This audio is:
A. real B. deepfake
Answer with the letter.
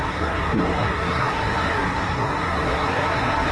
B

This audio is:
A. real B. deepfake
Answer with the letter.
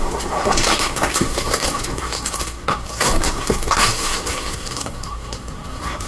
B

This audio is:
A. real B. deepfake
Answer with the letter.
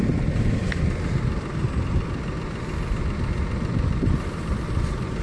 A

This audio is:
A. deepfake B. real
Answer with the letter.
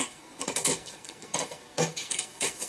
A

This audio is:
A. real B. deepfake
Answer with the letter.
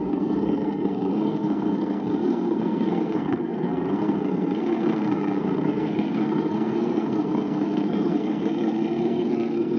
B